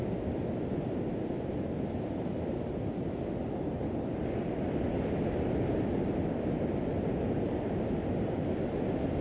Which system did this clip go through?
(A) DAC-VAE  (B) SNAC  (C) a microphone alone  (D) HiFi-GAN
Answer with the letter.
C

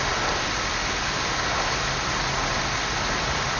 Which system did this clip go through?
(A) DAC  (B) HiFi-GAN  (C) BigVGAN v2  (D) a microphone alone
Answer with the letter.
D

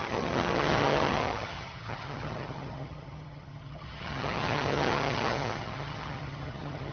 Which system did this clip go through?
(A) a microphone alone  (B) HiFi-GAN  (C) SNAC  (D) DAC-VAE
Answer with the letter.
B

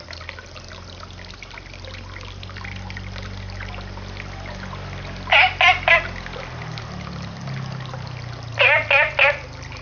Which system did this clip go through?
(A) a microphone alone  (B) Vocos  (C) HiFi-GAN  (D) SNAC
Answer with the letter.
A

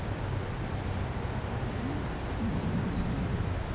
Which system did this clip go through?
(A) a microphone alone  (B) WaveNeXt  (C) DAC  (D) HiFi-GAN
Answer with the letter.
A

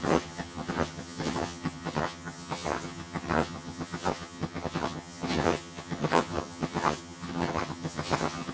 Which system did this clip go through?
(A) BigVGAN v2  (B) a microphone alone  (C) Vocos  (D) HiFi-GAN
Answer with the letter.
D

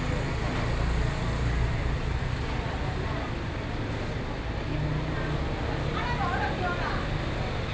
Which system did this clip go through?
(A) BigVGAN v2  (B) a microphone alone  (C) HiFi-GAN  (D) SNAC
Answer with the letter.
B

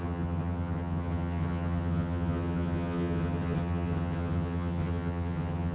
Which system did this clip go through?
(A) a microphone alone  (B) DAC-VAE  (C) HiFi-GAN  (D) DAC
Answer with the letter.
C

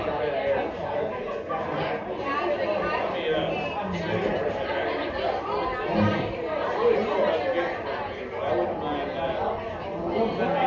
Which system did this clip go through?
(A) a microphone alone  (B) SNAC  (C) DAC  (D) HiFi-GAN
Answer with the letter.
A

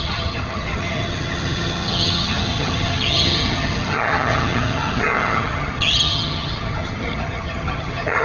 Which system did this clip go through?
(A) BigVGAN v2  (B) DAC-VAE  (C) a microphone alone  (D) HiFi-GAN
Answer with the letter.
D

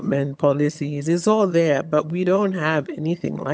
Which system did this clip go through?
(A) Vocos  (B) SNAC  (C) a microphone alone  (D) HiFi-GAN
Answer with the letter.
D